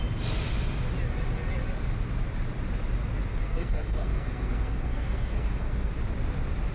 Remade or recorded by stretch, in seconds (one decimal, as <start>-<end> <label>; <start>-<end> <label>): 0.0-3.3 recorded; 3.3-5.9 remade; 5.9-6.7 recorded